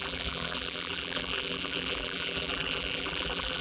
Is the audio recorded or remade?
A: remade